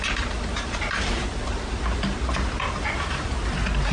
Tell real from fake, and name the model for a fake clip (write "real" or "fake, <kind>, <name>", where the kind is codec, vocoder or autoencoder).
real